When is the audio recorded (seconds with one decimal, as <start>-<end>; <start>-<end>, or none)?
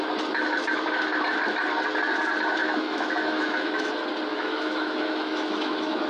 0.0-2.6; 3.9-4.3